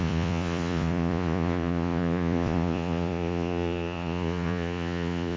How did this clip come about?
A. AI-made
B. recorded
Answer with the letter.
A